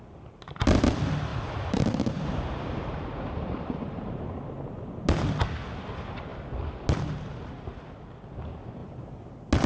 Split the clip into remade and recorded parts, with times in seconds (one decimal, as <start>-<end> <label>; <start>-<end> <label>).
0.0-1.3 recorded; 1.3-4.4 remade; 4.4-9.7 recorded